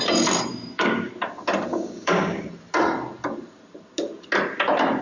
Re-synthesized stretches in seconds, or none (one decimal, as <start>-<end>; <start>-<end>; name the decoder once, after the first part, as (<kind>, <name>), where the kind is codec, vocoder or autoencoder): 0.5-1.1 (codec, DAC); 1.7-2.5